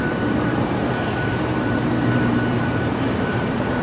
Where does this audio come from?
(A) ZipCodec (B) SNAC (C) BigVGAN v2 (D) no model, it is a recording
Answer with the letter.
C